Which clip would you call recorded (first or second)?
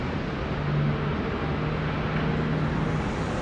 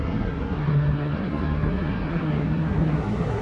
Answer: first